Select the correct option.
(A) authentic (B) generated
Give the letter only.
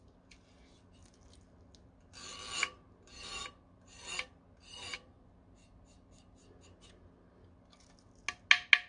A